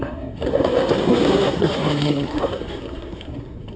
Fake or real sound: fake